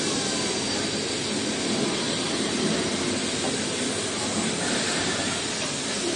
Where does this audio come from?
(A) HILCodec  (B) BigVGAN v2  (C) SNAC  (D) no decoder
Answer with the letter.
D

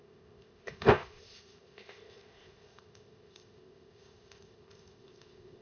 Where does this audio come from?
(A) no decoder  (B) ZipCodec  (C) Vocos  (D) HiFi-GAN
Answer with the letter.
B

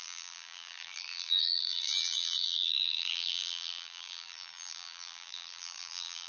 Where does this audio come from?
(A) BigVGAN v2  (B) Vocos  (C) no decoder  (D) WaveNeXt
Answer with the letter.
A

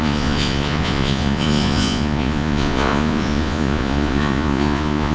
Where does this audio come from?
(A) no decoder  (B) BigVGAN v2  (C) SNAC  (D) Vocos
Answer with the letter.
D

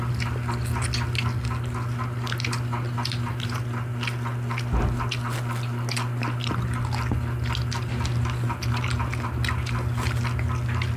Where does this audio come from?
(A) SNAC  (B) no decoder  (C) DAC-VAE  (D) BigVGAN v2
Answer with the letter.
B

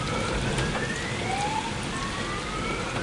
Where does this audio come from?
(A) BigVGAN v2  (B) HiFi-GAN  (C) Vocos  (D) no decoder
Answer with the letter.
D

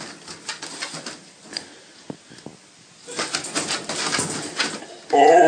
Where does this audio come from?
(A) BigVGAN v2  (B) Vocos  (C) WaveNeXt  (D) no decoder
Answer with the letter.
D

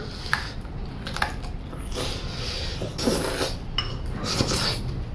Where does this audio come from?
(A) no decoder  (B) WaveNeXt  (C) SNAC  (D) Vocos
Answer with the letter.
A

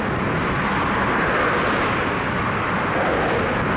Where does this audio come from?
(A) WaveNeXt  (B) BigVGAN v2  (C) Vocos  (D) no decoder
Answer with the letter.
D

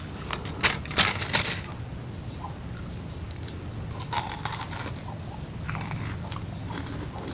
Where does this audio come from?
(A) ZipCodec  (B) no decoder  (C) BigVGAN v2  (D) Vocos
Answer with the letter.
B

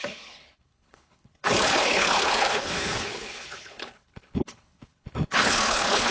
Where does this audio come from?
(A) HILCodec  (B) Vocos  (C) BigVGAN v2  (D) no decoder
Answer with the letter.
A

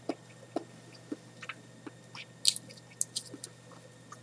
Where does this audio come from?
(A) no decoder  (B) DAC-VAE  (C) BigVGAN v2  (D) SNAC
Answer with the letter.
A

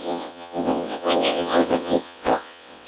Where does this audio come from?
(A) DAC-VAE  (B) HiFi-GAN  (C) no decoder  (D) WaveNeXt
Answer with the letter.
D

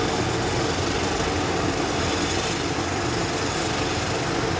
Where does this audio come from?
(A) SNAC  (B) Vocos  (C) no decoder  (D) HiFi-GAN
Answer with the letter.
C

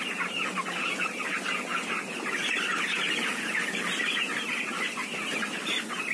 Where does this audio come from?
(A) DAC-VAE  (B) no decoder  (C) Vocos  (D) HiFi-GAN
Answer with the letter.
B